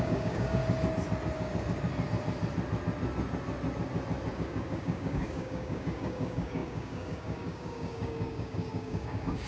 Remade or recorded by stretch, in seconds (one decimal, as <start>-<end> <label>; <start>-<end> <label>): 0.0-0.6 remade; 0.6-4.3 recorded; 4.3-9.5 remade